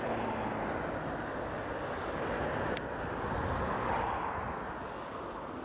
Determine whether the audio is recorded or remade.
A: recorded